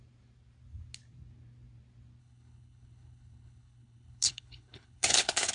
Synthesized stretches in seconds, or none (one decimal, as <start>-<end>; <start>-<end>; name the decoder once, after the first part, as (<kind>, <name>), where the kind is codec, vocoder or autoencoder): 2.2-5.5 (codec, HILCodec)